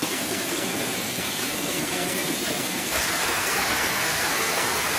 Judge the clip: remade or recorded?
remade